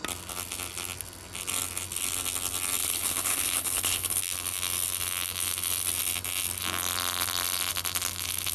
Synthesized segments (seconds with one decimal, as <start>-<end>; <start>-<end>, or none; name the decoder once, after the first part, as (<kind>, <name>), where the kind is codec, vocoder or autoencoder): 2.8-4.2 (codec, HILCodec)